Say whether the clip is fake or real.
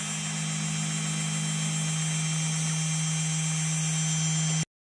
real